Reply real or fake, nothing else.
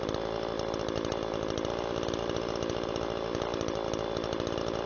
real